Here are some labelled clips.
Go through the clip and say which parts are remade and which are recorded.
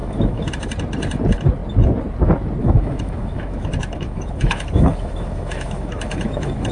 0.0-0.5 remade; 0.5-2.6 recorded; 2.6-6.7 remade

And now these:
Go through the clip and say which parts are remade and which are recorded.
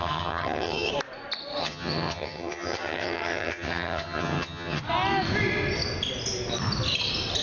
0.0-0.9 remade; 0.9-1.6 recorded; 1.6-4.8 remade; 4.8-7.4 recorded